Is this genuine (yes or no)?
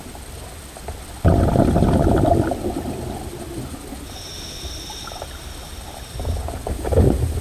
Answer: yes